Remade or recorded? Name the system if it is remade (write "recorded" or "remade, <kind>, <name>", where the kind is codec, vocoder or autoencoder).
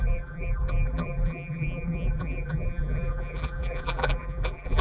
remade, vocoder, BigVGAN v2